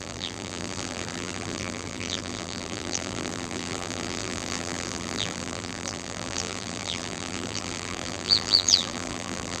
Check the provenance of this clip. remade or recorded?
remade